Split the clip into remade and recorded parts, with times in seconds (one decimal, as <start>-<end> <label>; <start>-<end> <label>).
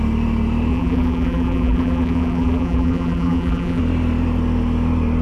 0.0-0.7 recorded; 0.7-3.8 remade; 3.8-5.2 recorded